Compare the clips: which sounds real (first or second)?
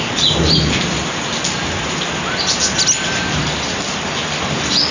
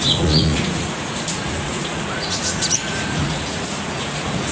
first